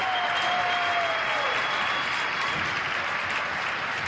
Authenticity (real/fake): real